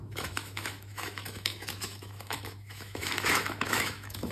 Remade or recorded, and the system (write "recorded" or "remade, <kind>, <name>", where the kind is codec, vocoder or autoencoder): remade, autoencoder, DAC-VAE